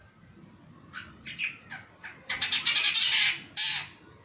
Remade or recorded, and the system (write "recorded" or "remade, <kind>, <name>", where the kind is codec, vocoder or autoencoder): recorded